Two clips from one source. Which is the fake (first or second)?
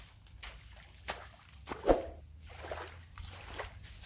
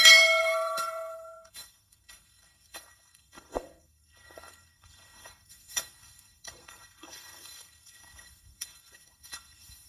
second